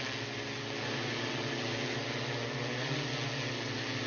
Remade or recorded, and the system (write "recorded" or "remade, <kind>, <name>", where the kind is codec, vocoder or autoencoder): recorded